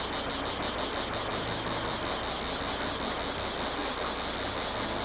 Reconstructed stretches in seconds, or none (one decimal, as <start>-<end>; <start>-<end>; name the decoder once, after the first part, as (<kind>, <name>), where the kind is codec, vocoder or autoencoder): none